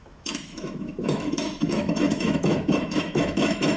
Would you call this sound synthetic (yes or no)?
yes